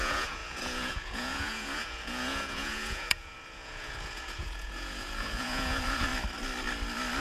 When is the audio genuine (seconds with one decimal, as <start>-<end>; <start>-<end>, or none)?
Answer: 6.1-7.2